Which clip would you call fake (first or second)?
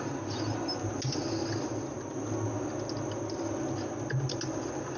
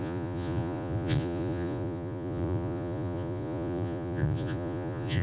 second